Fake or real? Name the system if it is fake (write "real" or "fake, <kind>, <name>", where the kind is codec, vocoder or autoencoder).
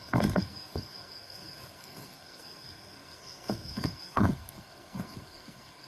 fake, codec, SNAC